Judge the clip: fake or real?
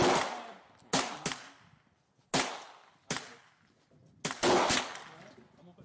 real